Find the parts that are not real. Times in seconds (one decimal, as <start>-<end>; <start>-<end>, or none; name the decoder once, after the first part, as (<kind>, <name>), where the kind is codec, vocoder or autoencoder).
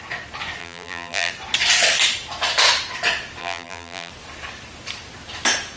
0.6-1.3 (vocoder, BigVGAN v2); 3.4-4.1